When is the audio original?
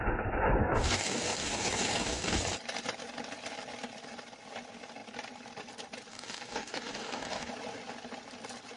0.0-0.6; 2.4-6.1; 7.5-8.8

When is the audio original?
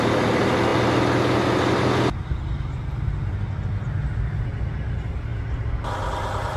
0.0-6.6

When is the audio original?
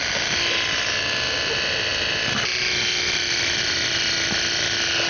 0.0-5.1